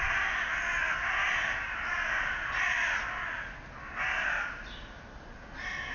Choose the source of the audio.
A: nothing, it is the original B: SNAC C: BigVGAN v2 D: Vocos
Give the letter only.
A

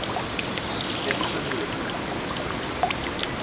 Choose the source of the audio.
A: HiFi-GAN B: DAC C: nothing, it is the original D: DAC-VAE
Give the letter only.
C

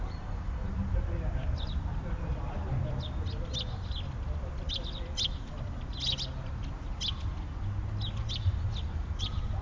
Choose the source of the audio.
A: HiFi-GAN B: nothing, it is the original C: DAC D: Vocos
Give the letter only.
B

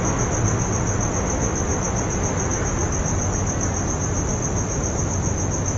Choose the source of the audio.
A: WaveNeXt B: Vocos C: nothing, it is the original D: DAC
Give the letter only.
C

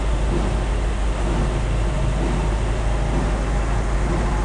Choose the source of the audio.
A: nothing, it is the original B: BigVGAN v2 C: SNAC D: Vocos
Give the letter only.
A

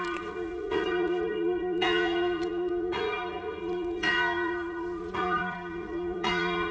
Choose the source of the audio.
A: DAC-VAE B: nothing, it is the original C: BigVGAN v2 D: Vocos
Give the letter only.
D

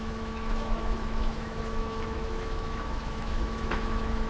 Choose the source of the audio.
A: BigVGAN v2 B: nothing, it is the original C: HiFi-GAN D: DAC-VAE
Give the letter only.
D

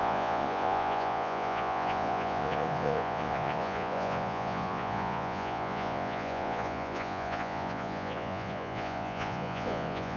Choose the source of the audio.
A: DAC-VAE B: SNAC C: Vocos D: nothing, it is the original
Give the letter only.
C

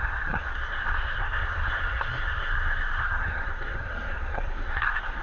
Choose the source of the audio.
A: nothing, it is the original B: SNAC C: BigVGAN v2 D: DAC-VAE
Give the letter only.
B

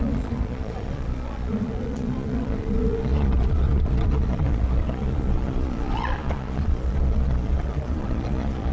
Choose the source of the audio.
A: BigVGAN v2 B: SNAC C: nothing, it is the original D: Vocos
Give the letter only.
D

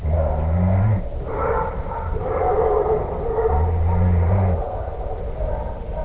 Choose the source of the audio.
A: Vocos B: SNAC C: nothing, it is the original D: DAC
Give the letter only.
C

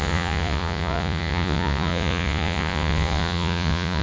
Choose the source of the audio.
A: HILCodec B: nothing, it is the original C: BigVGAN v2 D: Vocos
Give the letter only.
D